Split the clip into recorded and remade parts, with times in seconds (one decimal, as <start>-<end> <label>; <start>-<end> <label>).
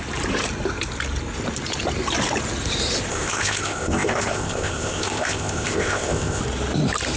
0.0-3.1 recorded; 3.1-6.4 remade; 6.4-7.2 recorded